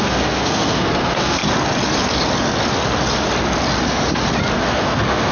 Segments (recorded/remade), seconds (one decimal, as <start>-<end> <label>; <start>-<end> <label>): 0.0-1.4 remade; 1.4-4.6 recorded; 4.6-5.3 remade